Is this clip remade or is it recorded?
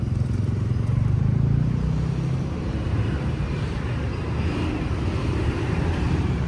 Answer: remade